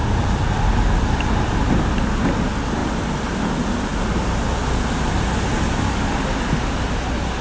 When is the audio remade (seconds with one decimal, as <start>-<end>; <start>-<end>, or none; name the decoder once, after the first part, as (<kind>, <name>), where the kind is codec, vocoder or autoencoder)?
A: none